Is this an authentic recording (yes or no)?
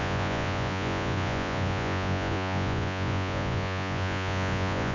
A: no